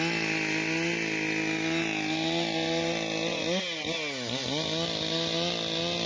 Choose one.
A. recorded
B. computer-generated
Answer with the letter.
A